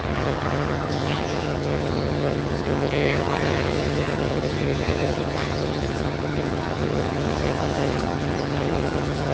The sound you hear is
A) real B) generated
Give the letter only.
B